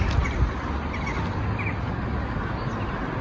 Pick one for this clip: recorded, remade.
recorded